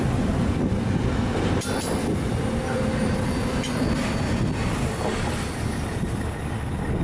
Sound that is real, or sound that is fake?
real